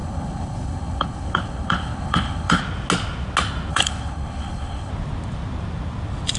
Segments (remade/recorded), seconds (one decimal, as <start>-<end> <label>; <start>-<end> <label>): 0.0-2.6 remade; 2.6-3.7 recorded; 3.7-4.9 remade; 4.9-6.4 recorded